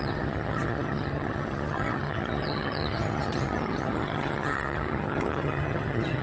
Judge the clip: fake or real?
fake